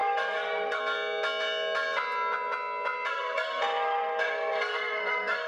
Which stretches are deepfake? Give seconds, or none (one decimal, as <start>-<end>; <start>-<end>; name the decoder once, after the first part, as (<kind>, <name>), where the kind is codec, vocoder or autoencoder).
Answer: 0.0-0.8 (codec, SNAC); 3.1-5.5